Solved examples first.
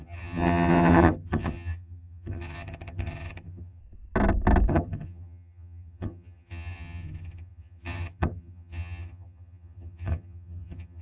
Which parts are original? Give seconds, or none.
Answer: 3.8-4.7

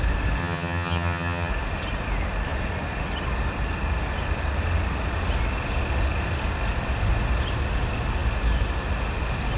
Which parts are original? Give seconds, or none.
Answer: 0.0-0.4; 1.5-9.6

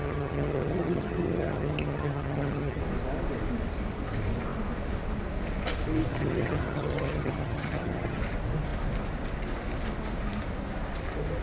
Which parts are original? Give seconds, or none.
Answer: 2.8-6.1; 8.2-11.4

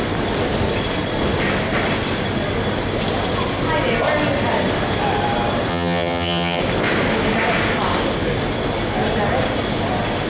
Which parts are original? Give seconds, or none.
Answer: 0.0-5.7; 6.6-10.3

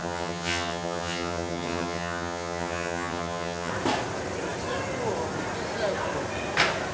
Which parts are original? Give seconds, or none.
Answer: 3.7-6.9

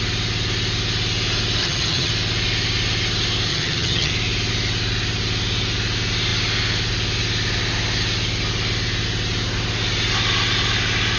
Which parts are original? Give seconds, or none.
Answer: 0.0-1.6; 2.1-3.5; 4.1-11.2